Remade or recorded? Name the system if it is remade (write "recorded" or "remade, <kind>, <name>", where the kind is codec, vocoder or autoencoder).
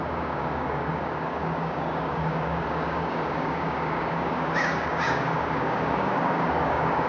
remade, codec, DAC